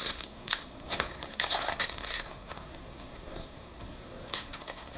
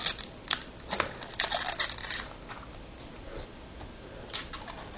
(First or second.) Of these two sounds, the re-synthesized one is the first